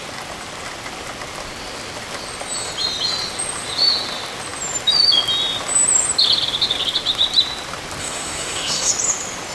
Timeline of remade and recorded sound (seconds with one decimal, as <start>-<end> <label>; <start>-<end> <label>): 0.0-8.0 recorded; 8.0-8.9 remade; 8.9-9.5 recorded